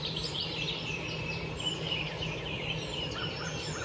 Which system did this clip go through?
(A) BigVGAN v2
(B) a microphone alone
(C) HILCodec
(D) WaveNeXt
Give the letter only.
A